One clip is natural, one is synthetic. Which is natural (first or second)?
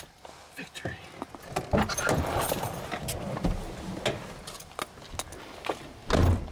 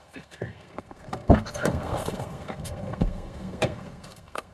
first